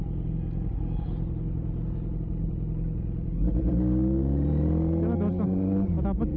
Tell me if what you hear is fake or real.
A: real